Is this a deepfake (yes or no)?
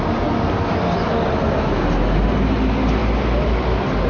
no